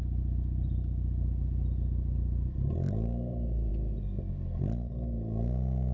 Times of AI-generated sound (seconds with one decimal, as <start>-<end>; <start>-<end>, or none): none